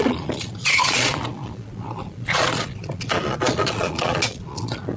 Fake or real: fake